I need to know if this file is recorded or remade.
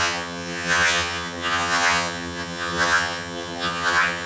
remade